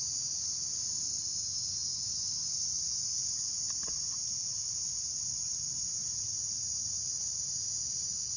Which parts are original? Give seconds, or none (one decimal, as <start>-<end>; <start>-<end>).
0.0-3.2; 5.6-8.4